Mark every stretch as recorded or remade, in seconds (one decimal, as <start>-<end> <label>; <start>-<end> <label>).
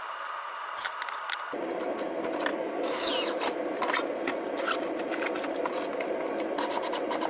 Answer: 0.0-2.5 recorded; 2.5-3.1 remade; 3.1-7.3 recorded